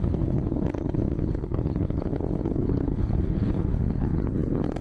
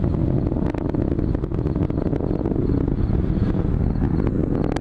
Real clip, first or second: second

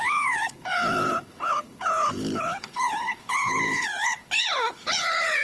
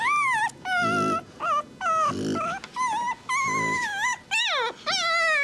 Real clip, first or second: second